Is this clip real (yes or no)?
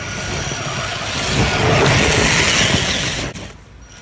yes